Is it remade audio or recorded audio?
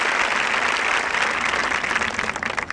recorded